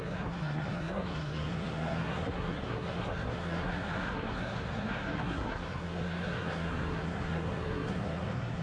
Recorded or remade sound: remade